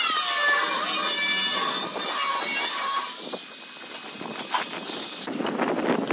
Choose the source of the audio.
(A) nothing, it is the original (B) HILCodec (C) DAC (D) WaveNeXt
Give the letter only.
A